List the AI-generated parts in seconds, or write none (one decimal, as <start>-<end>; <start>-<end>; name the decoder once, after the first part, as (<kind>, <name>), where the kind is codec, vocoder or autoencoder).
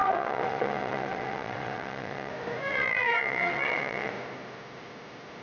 0.0-2.3 (vocoder, WaveNeXt); 2.7-4.1